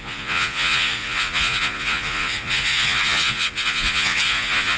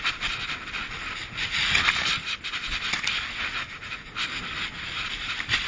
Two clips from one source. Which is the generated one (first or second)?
first